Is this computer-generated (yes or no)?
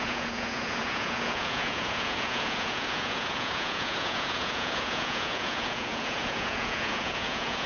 yes